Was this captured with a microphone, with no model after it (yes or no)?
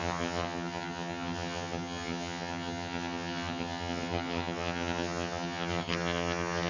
no